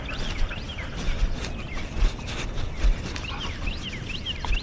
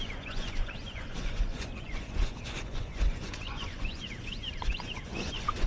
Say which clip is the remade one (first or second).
second